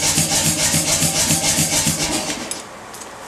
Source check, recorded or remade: recorded